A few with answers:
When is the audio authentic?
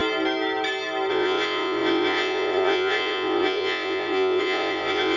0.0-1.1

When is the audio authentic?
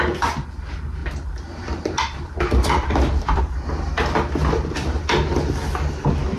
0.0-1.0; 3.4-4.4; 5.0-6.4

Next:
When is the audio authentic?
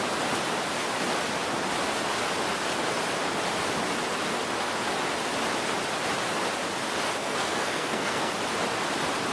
0.0-7.2; 8.3-9.3